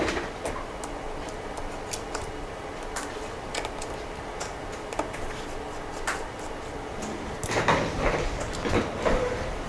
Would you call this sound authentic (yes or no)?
yes